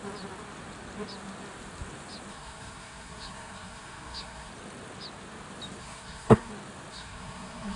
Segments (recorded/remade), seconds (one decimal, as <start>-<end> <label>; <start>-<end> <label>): 0.0-2.3 recorded; 2.3-4.5 remade; 4.5-5.8 recorded; 5.8-6.5 remade; 6.5-6.9 recorded; 6.9-7.8 remade